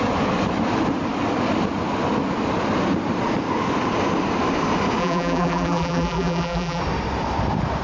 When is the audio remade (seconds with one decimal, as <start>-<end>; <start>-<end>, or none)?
5.0-6.8